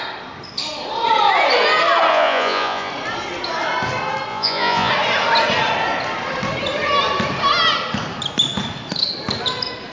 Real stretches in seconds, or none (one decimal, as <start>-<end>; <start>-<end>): 0.0-2.1; 2.9-4.3; 4.9-9.9